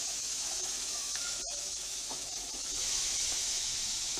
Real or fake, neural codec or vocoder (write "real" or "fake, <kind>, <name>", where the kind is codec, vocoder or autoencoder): fake, autoencoder, DAC-VAE